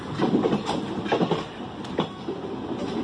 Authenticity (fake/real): real